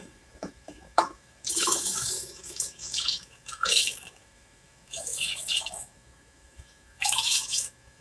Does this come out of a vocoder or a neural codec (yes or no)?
yes